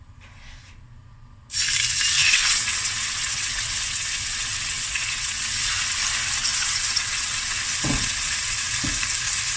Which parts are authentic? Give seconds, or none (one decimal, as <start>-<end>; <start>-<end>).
0.0-2.2; 5.7-6.4; 8.7-9.6